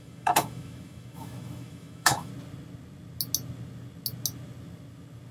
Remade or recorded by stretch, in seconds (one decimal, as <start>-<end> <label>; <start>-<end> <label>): 0.0-2.3 remade; 2.3-5.3 recorded